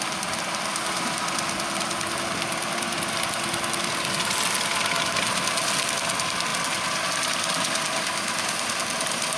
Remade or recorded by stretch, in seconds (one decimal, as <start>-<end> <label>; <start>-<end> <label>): 0.0-9.4 recorded